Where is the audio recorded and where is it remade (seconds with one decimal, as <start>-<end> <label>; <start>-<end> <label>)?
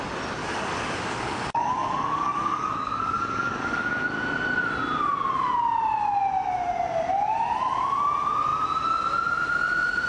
0.0-0.4 recorded; 0.4-4.0 remade; 4.0-10.1 recorded